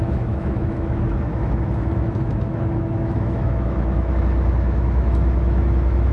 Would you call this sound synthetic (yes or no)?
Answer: yes